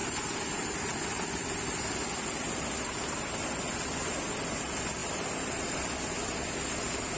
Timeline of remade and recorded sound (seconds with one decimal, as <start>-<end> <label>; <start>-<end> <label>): 0.0-0.8 remade; 0.8-5.0 recorded; 5.0-5.9 remade; 5.9-7.2 recorded